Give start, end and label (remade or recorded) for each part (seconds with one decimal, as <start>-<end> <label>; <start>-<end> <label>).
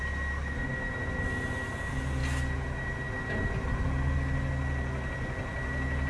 0.0-6.1 recorded